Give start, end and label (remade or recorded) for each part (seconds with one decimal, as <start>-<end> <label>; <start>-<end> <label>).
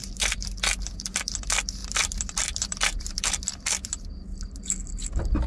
0.0-1.4 remade; 1.4-1.8 recorded; 1.8-4.1 remade; 4.1-5.5 recorded